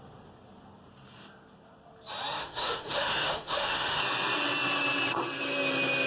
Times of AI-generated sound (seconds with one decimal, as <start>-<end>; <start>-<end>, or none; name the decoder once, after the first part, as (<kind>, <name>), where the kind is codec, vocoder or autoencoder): 2.4-4.0 (autoencoder, DAC-VAE)